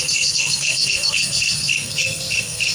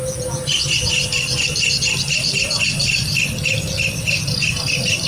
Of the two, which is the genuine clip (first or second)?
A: second